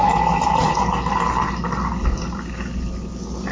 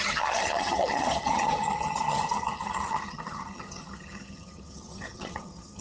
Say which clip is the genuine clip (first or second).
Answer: first